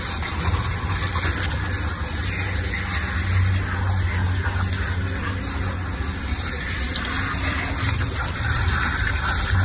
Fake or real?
real